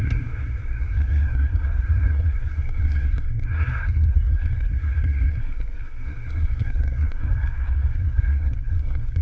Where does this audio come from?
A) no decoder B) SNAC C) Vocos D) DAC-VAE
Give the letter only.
B